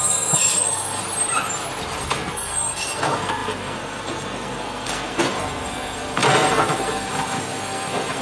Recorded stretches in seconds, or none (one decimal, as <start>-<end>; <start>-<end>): 1.0-2.0